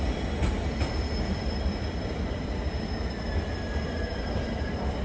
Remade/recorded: recorded